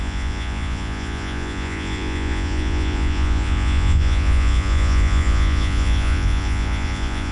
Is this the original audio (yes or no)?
no